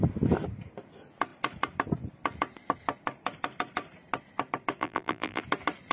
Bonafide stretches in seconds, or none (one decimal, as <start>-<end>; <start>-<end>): 0.0-4.8; 5.4-5.9